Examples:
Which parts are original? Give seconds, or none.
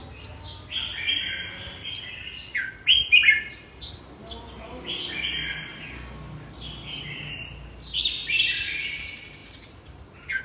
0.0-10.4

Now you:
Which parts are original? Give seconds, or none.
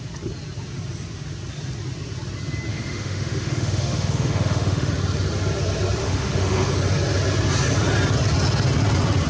0.0-2.7; 4.9-6.0; 6.7-9.3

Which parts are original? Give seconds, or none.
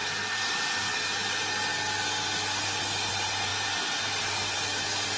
0.0-5.2